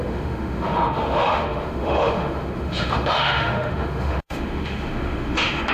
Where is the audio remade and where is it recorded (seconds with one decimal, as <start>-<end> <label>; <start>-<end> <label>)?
0.0-5.7 remade